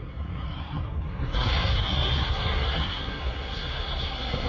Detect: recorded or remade remade